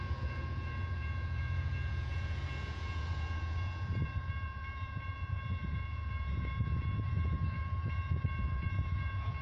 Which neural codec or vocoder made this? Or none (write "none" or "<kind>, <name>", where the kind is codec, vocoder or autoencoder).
vocoder, Vocos